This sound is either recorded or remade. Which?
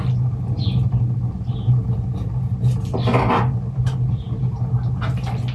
recorded